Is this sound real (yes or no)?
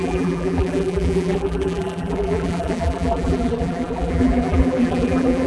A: no